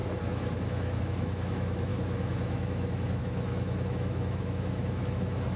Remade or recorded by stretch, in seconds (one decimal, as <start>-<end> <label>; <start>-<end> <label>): 0.0-5.6 remade